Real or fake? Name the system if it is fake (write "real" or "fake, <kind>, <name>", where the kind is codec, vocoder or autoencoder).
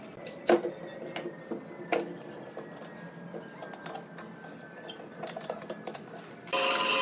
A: real